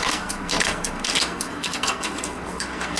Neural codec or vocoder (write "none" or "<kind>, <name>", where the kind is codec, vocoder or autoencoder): codec, SNAC